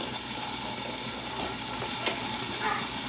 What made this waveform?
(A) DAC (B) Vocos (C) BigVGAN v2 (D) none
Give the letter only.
D